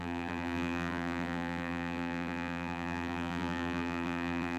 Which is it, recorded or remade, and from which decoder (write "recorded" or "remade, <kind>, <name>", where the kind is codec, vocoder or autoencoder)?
remade, vocoder, BigVGAN v2